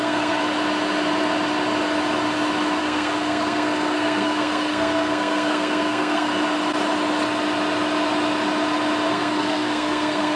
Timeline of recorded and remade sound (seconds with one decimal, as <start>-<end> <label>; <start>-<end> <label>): 0.0-0.4 remade; 0.4-2.8 recorded; 2.8-6.3 remade; 6.3-9.1 recorded; 9.1-10.4 remade